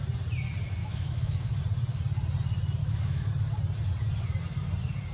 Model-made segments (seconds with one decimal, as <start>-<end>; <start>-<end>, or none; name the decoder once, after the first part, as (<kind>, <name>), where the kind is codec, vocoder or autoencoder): 0.8-1.6 (autoencoder, DAC-VAE); 2.8-3.3